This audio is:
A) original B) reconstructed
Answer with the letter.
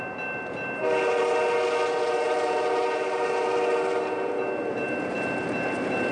A